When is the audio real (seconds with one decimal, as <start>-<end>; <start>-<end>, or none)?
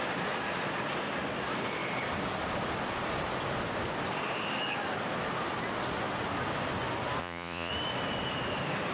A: 0.0-7.2; 7.7-8.9